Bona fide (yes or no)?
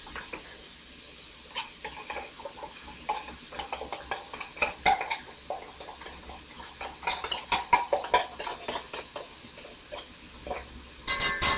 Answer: yes